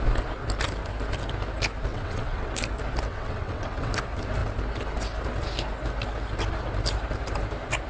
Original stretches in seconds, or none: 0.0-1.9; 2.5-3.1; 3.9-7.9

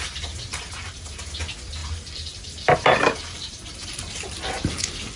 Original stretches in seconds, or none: 0.0-0.5; 1.2-1.8; 4.2-5.2

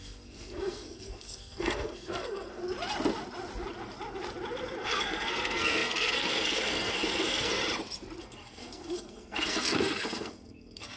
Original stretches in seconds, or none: 2.6-4.8; 7.6-8.2

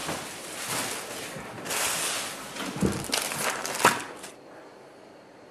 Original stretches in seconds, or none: 3.3-5.5

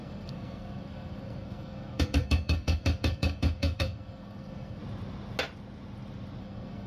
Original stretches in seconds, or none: 4.8-6.4

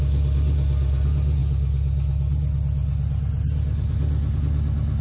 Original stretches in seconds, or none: 0.0-5.0